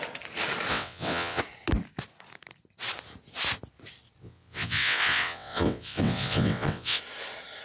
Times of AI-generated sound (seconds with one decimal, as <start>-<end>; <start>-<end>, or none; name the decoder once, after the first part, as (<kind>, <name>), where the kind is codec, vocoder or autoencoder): 0.7-1.4 (vocoder, WaveNeXt); 4.2-7.0